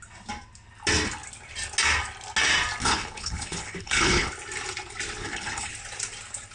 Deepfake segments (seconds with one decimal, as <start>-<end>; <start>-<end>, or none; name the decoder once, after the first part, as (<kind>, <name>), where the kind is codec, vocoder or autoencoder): 2.8-4.3 (codec, HILCodec); 5.2-5.7